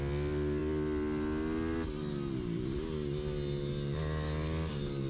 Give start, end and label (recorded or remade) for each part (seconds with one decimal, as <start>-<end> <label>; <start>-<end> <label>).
0.0-5.1 recorded